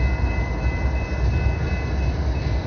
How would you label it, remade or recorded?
recorded